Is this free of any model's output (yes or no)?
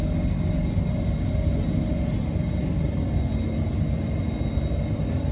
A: yes